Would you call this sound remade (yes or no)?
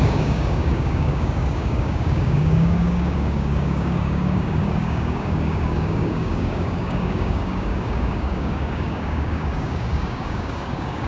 yes